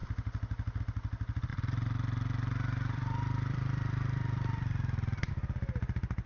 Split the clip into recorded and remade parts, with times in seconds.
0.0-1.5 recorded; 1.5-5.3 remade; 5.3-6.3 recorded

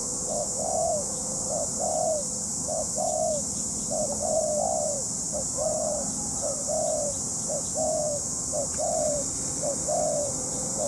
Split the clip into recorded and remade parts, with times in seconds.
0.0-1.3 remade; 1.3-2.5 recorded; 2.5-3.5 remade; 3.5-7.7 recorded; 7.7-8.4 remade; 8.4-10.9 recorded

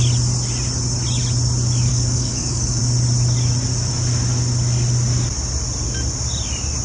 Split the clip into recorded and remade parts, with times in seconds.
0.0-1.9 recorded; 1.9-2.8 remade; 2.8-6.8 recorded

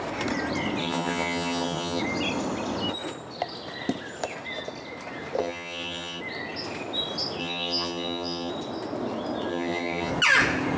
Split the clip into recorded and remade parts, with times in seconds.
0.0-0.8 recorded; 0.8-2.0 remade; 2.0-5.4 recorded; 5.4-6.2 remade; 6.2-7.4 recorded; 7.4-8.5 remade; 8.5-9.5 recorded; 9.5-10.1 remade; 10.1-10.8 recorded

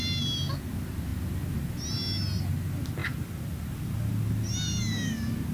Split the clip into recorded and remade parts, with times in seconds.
0.0-5.5 recorded